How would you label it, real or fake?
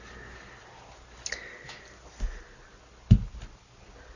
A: real